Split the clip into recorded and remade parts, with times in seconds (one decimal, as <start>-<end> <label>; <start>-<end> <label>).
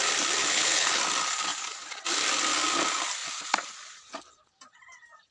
0.0-0.4 recorded; 0.4-1.0 remade; 1.0-5.3 recorded